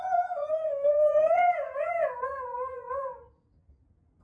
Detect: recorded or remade remade